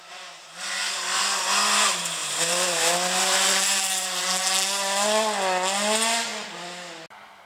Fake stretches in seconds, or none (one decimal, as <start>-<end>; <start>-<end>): 2.2-4.2